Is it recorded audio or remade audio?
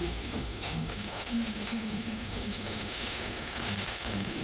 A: remade